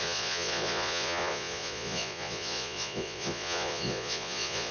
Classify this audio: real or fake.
fake